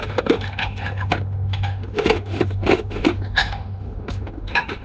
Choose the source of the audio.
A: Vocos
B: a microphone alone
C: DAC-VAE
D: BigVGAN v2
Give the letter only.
C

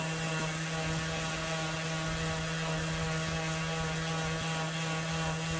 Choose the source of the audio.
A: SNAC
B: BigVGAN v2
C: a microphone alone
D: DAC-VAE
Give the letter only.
C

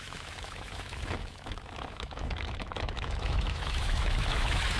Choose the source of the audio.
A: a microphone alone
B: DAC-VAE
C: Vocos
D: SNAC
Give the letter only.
B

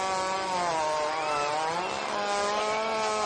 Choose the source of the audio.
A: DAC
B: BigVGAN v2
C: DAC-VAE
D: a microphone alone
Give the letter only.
D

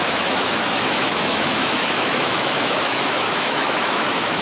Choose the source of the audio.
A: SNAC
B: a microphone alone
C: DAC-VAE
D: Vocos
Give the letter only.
C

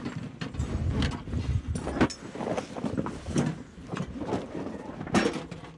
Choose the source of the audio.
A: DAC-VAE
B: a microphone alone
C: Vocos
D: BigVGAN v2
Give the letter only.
B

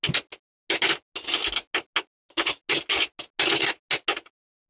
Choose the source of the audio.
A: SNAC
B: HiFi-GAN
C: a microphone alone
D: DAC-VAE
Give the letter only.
C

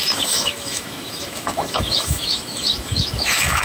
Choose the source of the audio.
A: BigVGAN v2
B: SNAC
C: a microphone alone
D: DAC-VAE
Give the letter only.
D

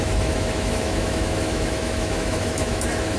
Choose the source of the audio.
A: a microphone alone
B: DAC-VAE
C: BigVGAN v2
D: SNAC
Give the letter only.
B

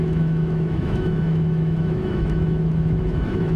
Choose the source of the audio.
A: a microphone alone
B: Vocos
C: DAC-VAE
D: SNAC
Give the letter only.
C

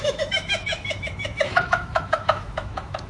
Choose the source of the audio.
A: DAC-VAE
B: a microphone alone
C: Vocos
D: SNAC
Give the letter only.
A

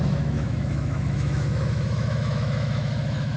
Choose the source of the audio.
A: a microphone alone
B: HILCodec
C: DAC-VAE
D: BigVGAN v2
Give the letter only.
C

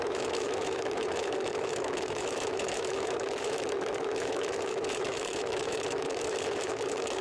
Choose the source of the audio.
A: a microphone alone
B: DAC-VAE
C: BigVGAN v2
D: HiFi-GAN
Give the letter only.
B